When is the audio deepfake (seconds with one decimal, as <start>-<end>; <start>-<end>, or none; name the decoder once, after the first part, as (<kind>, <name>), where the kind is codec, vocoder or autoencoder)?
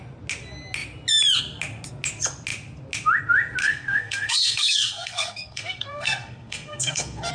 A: 3.6-7.3 (codec, SNAC)